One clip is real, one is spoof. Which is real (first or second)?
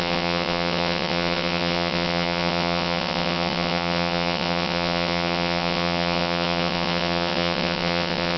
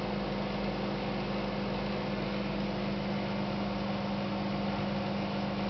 second